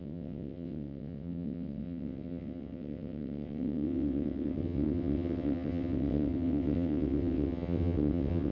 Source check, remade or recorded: remade